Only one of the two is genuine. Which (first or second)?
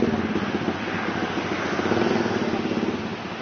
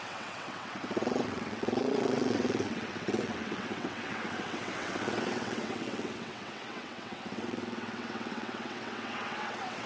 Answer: first